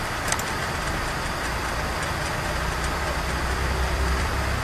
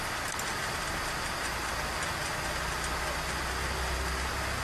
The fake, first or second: first